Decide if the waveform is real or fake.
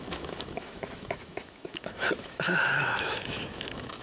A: fake